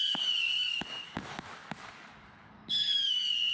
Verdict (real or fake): fake